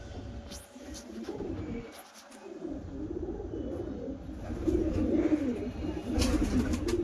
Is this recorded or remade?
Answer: recorded